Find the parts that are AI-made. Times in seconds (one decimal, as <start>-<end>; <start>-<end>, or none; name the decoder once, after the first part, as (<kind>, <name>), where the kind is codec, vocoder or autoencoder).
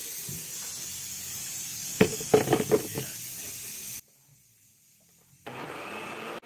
1.7-2.3 (codec, DAC)